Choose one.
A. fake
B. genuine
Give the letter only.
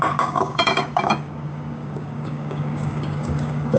A